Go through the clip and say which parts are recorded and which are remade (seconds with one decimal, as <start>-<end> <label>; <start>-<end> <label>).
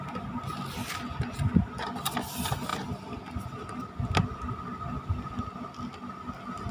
0.0-6.7 recorded